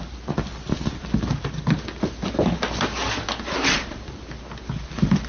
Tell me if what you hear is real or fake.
real